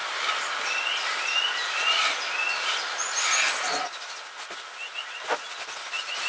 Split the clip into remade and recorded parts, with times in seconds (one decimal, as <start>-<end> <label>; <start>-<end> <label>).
0.0-6.3 recorded